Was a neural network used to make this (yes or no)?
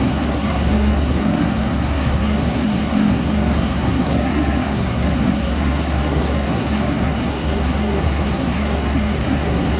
yes